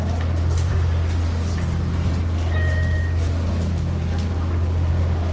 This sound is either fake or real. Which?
fake